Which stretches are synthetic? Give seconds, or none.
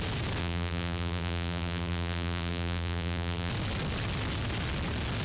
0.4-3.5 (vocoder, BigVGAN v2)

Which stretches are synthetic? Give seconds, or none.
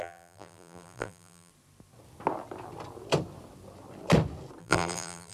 0.0-1.5 (vocoder, BigVGAN v2); 4.6-5.3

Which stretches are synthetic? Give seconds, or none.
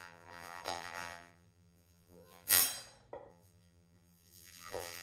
0.0-2.6 (vocoder, BigVGAN v2); 3.3-5.0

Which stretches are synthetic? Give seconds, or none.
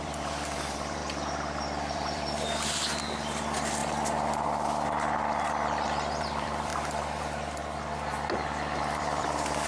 0.0-1.0 (vocoder, BigVGAN v2); 1.9-3.8; 6.2-6.7; 8.8-9.7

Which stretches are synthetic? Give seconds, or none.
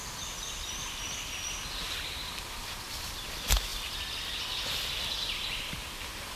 0.8-1.6 (vocoder, BigVGAN v2); 3.7-6.4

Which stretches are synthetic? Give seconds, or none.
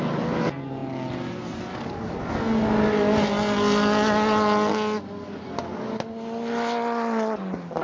none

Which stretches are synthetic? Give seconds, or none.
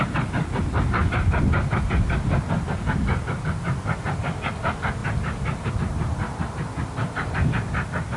1.0-1.7 (vocoder, BigVGAN v2)